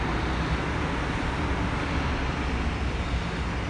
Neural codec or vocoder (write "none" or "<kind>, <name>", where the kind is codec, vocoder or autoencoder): none